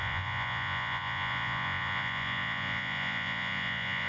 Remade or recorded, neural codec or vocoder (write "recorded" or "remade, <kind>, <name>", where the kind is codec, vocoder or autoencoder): remade, vocoder, Vocos